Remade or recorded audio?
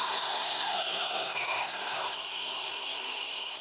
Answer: remade